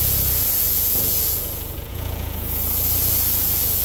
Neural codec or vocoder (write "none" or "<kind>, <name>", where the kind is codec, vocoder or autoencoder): vocoder, Vocos